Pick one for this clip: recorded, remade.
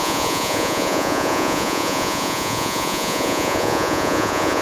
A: remade